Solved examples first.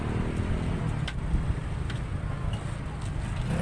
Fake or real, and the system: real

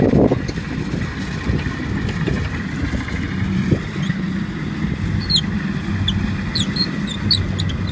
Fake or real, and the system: real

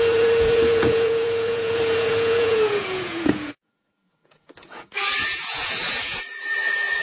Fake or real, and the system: fake, vocoder, Vocos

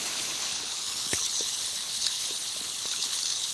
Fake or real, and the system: fake, codec, HILCodec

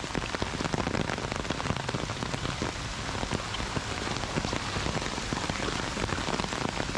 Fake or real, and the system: real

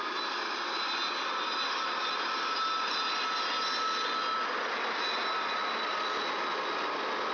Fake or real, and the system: real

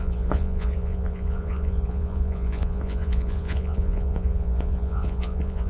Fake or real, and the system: fake, vocoder, Vocos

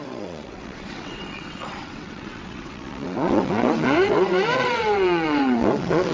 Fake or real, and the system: fake, vocoder, WaveNeXt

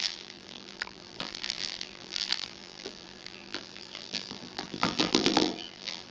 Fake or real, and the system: fake, vocoder, BigVGAN v2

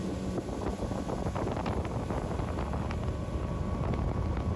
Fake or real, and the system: real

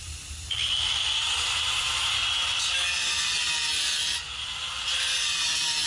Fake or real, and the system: real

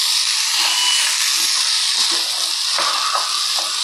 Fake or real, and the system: real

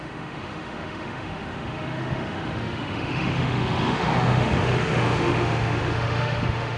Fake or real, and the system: fake, autoencoder, DAC-VAE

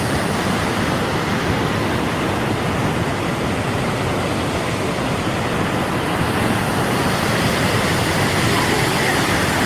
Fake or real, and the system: real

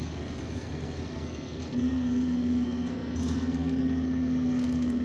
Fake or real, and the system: fake, codec, SNAC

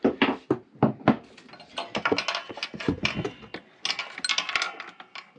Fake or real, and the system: real